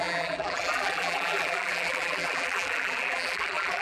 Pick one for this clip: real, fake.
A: fake